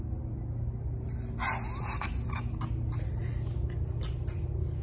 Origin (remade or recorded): recorded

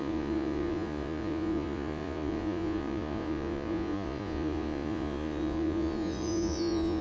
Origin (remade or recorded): remade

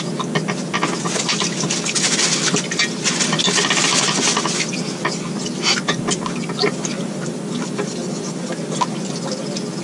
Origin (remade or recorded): recorded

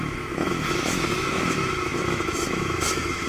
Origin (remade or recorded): remade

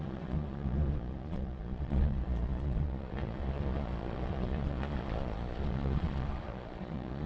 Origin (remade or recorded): remade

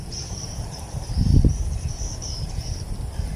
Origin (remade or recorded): remade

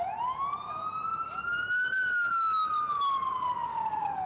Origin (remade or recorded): recorded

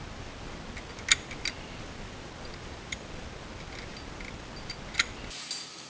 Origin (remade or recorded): recorded